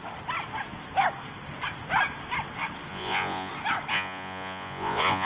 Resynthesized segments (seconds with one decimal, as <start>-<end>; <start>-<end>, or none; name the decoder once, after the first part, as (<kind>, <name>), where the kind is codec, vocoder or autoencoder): 2.9-3.5 (vocoder, Vocos); 3.9-5.3